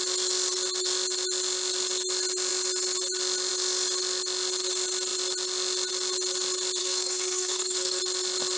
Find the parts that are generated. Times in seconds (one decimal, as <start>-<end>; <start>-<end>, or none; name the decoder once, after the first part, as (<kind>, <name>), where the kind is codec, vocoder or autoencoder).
6.8-8.0 (codec, SNAC)